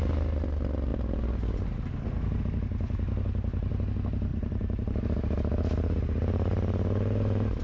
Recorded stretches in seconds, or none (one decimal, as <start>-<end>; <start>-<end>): 0.0-4.3